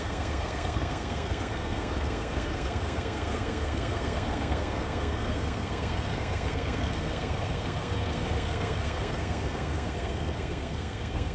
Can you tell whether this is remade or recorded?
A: remade